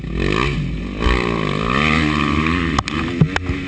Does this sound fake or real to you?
real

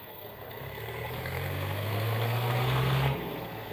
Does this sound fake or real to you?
fake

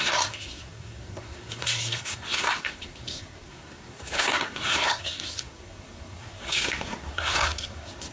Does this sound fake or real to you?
fake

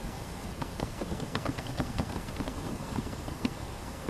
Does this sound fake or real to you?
fake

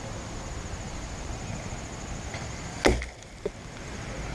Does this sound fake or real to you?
real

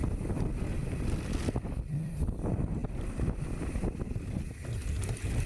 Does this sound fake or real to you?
real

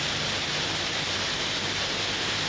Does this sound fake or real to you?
real